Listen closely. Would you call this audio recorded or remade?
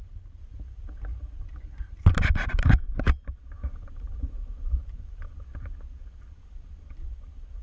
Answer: remade